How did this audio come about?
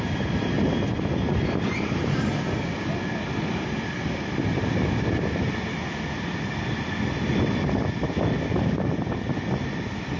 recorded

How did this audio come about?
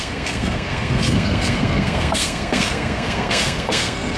remade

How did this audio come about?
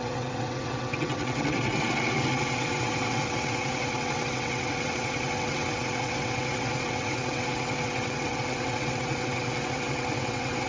remade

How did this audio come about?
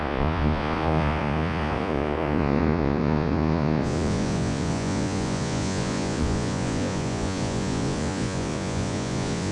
remade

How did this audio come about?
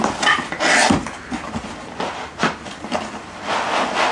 remade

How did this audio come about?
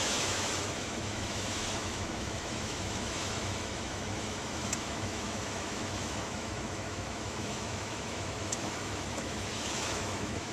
remade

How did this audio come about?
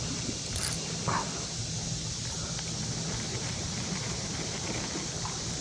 recorded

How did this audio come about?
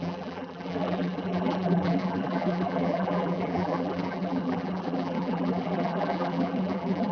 remade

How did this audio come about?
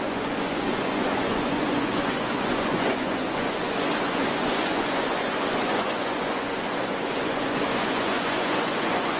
remade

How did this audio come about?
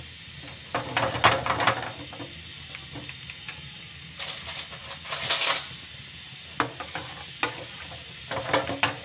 recorded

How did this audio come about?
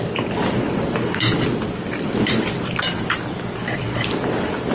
recorded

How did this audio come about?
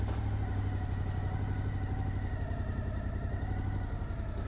recorded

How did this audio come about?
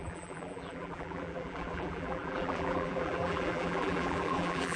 remade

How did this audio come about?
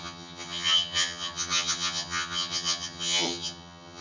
remade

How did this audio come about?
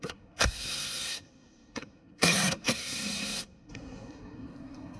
remade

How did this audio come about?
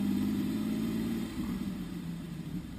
remade